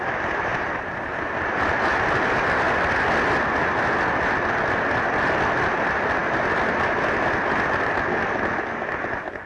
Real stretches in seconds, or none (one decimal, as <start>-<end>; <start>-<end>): 0.0-0.5; 2.4-9.5